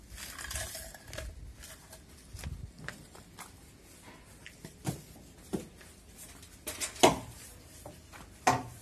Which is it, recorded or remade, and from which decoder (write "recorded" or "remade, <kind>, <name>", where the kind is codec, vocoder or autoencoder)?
recorded